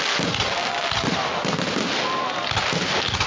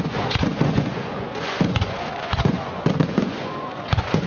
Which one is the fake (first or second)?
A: second